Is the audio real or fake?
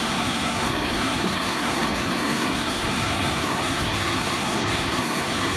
fake